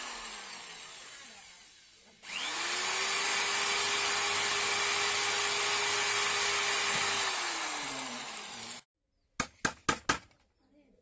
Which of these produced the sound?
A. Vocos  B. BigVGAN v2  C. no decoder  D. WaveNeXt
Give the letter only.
C